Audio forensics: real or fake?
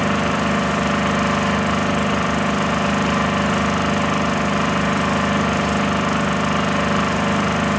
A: real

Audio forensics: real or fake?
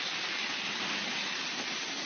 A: real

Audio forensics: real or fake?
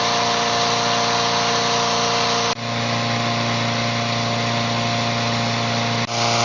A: real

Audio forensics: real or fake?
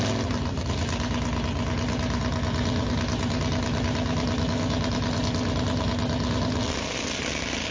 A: real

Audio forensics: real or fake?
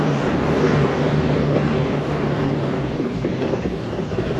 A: fake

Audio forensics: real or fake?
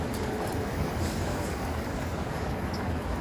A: fake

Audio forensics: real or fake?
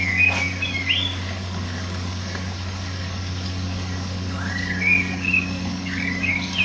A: fake